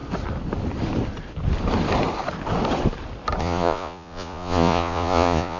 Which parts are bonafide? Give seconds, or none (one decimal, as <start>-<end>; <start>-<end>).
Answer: 0.0-3.4